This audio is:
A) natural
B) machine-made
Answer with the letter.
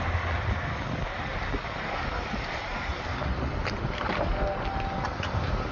A